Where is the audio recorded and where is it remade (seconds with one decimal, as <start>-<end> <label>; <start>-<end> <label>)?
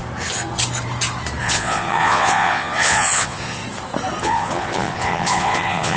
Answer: 0.0-1.4 recorded; 1.4-3.6 remade; 3.6-4.2 recorded; 4.2-6.0 remade